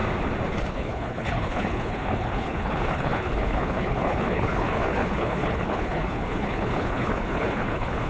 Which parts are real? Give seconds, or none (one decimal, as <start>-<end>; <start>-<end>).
0.0-0.7